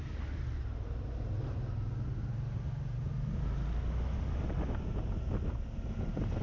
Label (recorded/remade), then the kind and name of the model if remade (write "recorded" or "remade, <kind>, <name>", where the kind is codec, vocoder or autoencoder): recorded